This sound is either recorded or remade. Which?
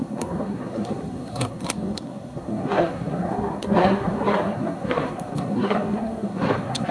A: remade